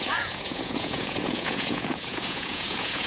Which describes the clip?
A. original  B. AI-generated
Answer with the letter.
B